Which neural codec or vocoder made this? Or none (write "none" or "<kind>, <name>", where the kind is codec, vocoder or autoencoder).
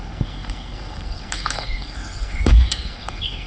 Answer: codec, SNAC